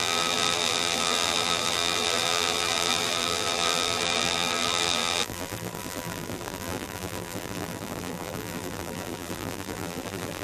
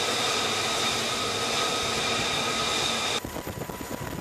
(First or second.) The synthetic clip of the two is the first